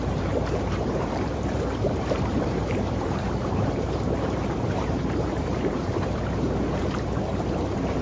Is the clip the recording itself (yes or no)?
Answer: no